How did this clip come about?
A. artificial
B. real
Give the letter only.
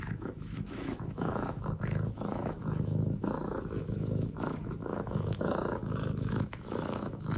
A